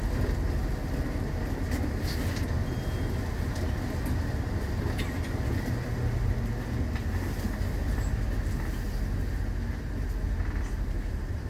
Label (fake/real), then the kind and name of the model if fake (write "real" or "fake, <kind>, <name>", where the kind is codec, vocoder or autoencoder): real